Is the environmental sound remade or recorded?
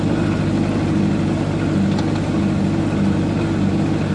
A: recorded